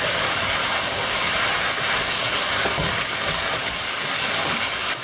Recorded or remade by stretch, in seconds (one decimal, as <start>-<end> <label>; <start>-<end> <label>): 0.0-0.6 remade; 0.6-2.0 recorded; 2.0-5.0 remade